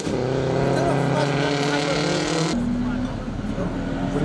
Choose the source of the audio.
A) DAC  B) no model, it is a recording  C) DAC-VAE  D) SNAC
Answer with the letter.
B